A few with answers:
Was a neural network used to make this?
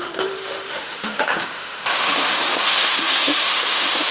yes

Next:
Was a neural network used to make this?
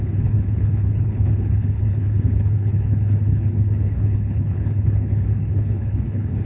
yes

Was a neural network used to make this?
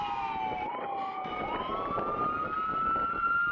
no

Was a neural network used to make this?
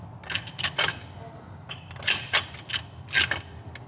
no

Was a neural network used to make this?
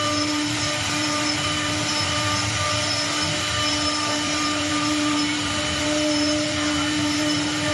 yes